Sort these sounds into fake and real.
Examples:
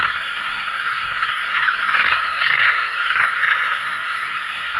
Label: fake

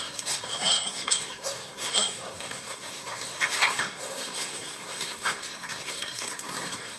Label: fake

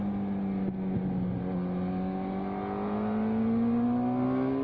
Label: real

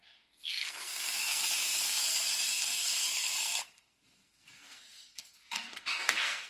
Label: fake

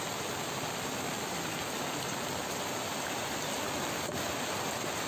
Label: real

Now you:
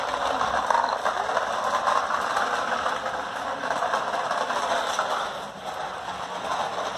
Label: real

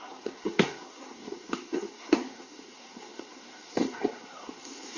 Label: fake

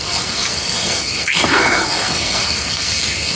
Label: fake